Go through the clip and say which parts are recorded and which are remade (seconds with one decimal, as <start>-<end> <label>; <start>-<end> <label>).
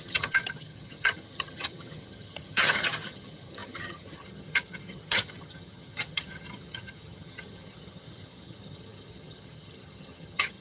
0.0-10.6 remade